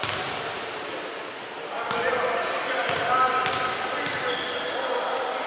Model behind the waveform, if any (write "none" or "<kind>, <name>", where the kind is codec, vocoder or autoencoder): none